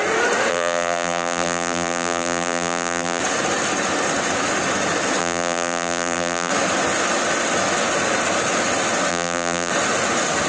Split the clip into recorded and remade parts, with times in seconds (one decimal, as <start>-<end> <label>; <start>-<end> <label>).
0.0-0.5 recorded; 0.5-3.2 remade; 3.2-5.2 recorded; 5.2-6.5 remade; 6.5-9.1 recorded; 9.1-9.7 remade; 9.7-10.5 recorded